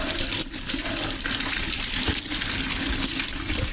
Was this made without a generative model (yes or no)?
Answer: yes